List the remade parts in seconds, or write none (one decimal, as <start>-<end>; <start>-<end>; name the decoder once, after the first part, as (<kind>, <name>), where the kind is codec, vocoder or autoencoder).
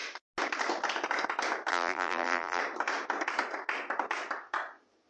1.7-2.6 (vocoder, BigVGAN v2)